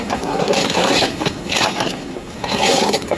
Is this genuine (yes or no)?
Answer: no